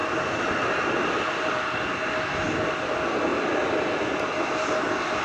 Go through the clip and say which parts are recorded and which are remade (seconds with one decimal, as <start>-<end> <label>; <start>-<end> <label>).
0.0-5.2 recorded